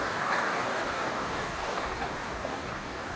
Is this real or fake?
fake